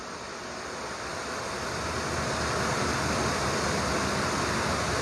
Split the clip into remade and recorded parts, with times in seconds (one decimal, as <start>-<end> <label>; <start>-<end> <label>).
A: 0.0-5.0 recorded